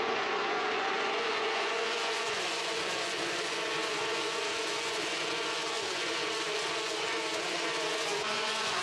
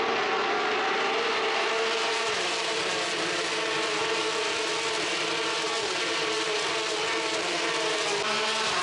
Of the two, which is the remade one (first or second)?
first